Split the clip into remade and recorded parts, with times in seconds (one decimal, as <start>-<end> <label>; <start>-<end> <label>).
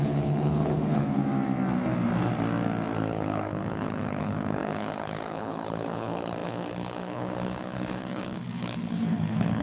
0.0-1.2 remade; 1.2-3.1 recorded; 3.1-9.6 remade